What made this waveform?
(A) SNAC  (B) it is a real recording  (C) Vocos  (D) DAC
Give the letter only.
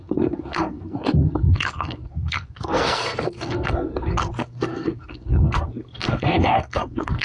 A